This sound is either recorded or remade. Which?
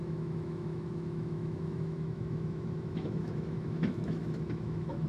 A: remade